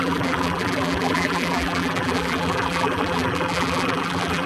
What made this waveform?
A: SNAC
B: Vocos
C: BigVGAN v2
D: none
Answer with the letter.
C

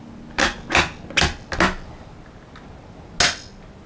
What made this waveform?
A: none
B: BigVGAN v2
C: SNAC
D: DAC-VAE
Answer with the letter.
A